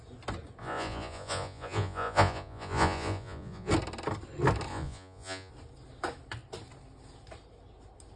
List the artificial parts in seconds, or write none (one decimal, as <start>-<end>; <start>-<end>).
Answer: 0.6-3.7; 4.7-5.5